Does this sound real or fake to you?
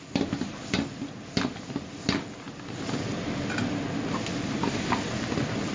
real